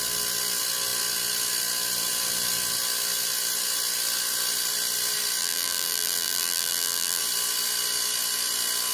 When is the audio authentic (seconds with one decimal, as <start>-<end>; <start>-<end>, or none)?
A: 0.0-5.4; 7.2-8.9